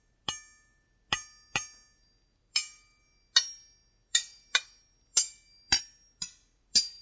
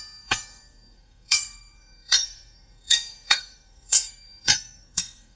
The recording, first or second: first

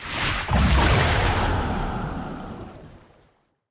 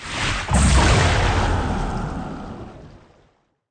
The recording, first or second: second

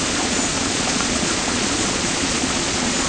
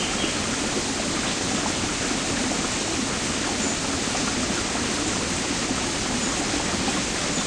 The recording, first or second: second